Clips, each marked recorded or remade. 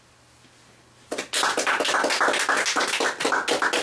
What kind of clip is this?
recorded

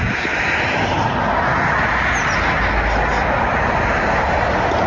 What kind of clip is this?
recorded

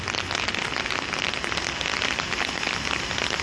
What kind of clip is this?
recorded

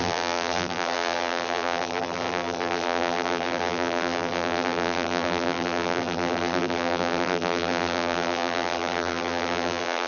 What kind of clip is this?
remade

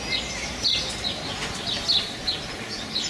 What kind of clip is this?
recorded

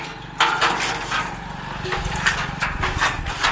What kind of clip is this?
recorded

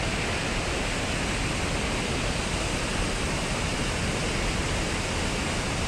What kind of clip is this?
recorded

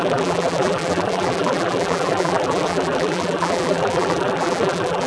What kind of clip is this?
remade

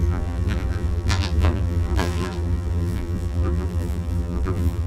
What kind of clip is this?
remade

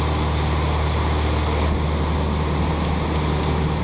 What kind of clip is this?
recorded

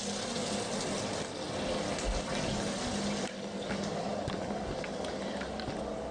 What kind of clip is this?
recorded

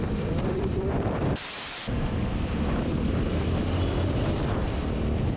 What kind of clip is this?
remade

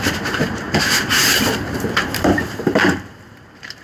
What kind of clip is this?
remade